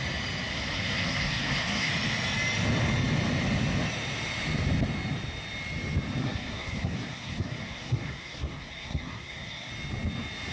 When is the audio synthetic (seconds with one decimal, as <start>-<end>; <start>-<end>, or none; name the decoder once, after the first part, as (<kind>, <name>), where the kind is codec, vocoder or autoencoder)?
0.5-1.9 (codec, SNAC); 6.2-9.7